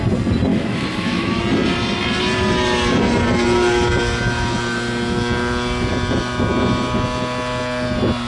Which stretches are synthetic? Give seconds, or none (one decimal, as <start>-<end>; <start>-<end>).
0.5-1.4